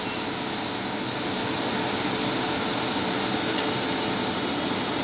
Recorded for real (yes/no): yes